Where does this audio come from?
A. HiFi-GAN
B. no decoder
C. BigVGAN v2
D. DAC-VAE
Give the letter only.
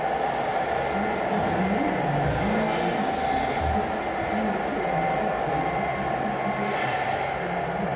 B